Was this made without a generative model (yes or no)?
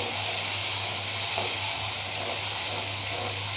no